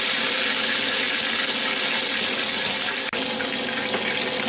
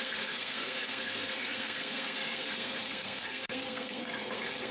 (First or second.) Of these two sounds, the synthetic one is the second